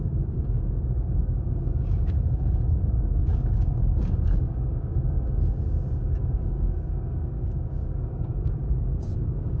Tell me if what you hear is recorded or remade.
remade